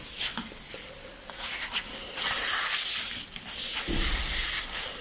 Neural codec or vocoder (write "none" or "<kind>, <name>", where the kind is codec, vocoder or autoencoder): none